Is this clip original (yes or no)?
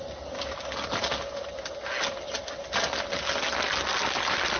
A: yes